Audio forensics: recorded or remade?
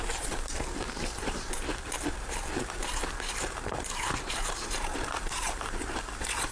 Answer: remade